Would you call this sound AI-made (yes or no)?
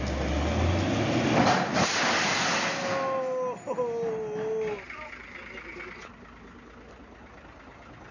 no